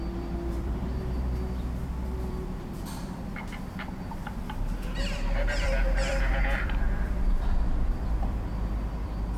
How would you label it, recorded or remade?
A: remade